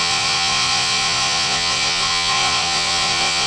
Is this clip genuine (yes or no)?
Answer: no